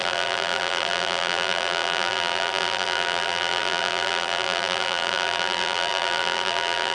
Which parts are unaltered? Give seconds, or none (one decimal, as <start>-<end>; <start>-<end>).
none